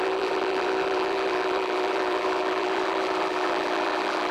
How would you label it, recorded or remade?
remade